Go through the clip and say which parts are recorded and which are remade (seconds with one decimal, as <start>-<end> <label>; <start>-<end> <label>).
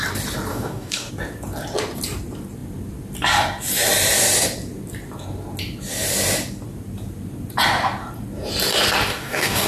0.0-0.5 recorded; 0.5-1.1 remade; 1.1-9.1 recorded; 9.1-9.7 remade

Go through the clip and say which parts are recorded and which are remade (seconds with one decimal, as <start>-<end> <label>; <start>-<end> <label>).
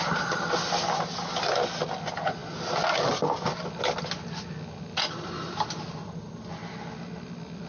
0.0-7.7 recorded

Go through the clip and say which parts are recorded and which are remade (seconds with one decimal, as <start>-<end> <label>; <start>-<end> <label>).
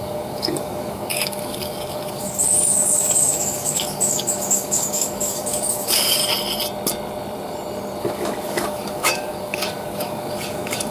0.0-6.2 remade; 6.2-8.0 recorded; 8.0-10.9 remade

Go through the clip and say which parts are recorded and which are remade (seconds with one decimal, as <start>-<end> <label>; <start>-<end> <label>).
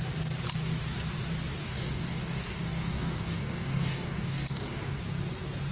0.0-1.6 recorded; 1.6-5.0 remade; 5.0-5.7 recorded